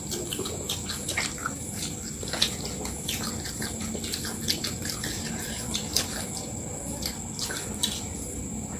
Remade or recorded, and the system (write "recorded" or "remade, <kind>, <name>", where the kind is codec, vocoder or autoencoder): recorded